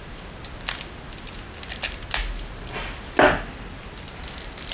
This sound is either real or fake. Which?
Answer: real